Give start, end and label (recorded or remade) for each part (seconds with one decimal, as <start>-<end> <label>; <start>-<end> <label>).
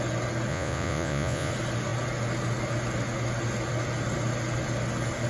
0.0-0.5 recorded; 0.5-1.5 remade; 1.5-5.3 recorded